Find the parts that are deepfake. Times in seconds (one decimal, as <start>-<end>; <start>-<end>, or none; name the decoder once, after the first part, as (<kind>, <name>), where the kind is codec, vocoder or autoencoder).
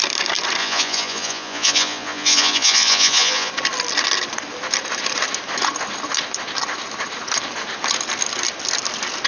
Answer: 0.6-3.5 (vocoder, Vocos)